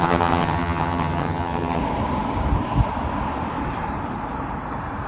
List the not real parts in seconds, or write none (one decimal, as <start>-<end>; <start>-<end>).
0.0-1.8

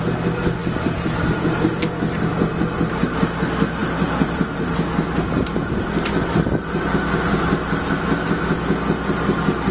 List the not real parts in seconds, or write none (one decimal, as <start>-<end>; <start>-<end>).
0.6-1.7; 3.8-4.6

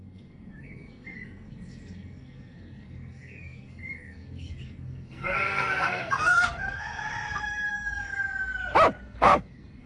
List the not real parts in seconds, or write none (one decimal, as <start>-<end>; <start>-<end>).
0.0-7.0; 7.7-8.2; 9.0-9.9

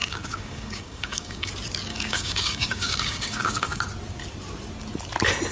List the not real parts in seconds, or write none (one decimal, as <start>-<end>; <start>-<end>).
0.0-1.5; 1.9-3.8

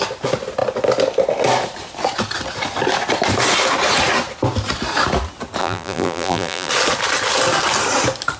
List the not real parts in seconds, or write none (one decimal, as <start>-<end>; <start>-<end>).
5.6-6.7

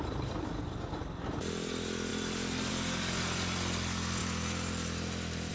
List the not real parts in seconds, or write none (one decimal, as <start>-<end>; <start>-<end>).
none

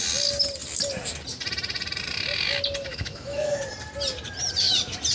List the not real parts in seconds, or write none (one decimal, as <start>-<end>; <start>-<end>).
2.9-3.6